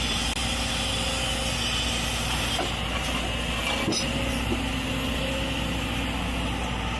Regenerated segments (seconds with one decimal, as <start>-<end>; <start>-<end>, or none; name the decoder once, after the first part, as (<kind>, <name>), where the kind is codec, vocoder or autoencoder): none